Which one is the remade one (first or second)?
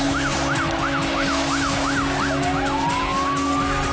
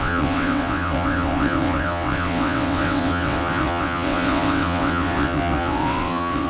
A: second